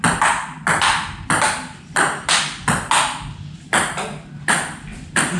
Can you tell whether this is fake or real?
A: real